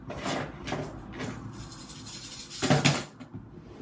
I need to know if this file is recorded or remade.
recorded